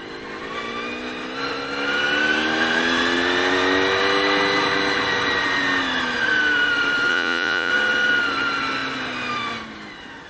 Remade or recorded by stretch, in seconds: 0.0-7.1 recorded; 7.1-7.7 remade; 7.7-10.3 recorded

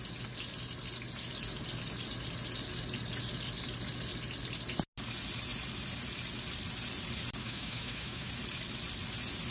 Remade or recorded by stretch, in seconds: 0.0-7.4 recorded; 7.4-8.3 remade; 8.3-9.5 recorded